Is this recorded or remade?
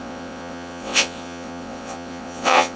remade